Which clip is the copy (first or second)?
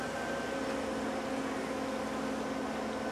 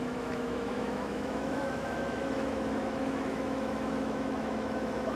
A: second